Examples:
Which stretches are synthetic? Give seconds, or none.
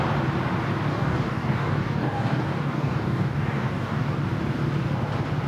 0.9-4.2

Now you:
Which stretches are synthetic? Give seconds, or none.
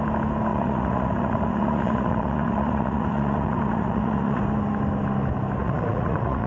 0.5-4.4; 5.6-6.5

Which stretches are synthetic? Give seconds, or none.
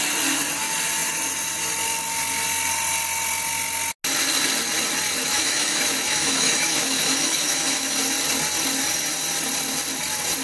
5.2-8.0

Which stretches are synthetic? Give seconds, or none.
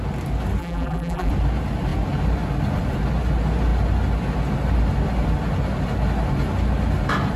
0.6-1.3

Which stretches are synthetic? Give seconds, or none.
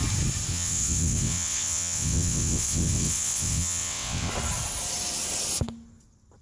0.5-4.3